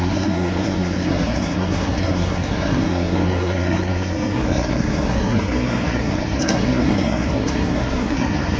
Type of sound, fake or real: fake